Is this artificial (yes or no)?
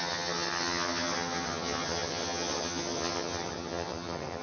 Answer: yes